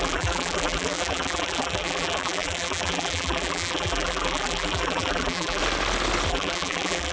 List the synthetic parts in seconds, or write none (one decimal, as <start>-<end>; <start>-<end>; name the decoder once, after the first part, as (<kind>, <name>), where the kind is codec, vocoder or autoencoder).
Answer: 0.0-5.6 (vocoder, BigVGAN v2); 6.3-7.1